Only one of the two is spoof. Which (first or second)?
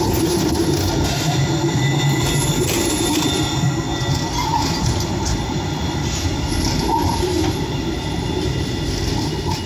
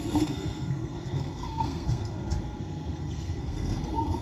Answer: second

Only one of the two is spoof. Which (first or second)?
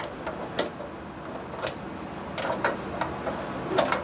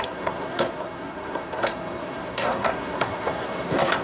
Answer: second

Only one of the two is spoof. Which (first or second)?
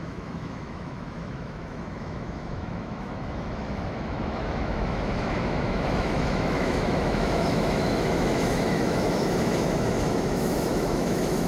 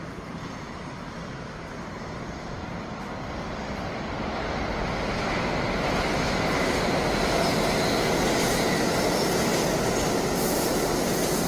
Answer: first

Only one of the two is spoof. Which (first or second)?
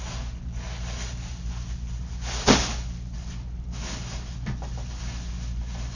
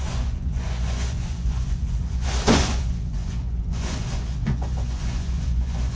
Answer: second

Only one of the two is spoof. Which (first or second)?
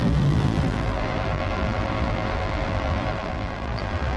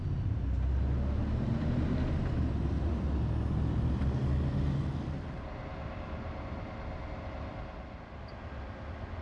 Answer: first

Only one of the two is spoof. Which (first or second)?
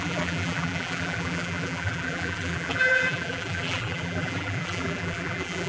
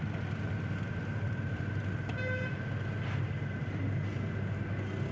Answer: first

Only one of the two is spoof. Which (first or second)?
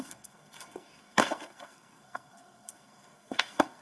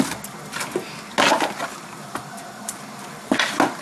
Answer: first